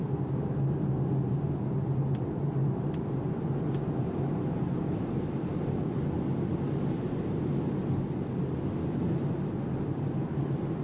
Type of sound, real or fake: real